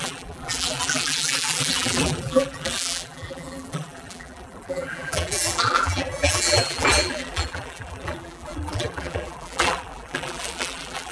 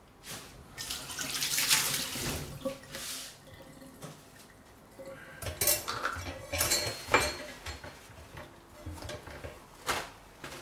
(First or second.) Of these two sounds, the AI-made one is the first